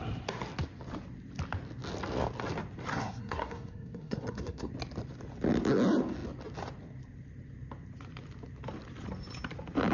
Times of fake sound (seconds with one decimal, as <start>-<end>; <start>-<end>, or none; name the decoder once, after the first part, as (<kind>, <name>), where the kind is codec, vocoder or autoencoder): 2.9-4.7 (codec, SNAC)